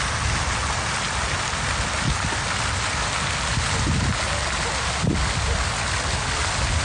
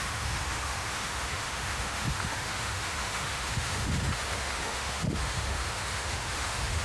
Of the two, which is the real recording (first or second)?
first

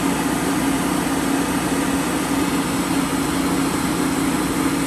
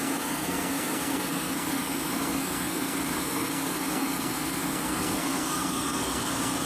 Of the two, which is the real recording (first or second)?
first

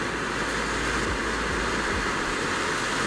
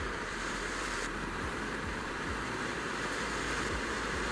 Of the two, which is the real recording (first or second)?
first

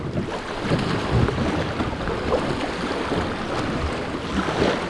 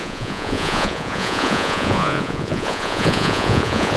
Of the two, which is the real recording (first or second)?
first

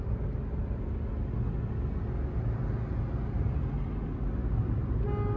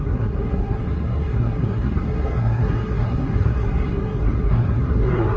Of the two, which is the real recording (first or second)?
first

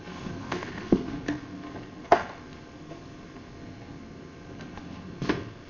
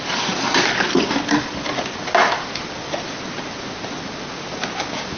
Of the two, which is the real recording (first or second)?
second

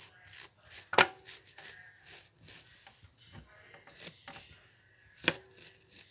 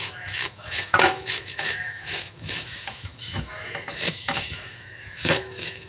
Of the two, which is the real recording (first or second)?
first